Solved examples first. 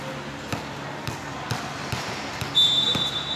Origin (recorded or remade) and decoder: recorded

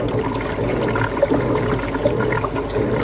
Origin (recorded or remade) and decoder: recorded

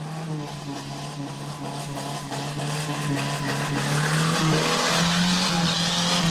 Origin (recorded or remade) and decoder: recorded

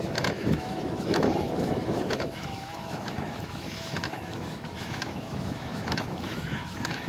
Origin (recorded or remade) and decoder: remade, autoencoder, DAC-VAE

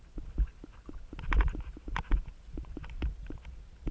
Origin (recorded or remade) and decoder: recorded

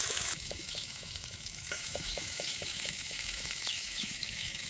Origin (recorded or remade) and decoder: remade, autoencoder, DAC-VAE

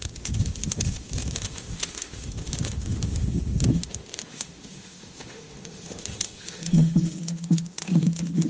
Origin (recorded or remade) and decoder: remade, autoencoder, DAC-VAE